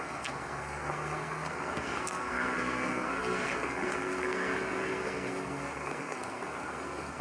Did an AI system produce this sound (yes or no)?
yes